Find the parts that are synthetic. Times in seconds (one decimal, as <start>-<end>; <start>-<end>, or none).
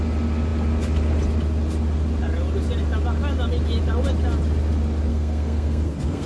5.1-6.3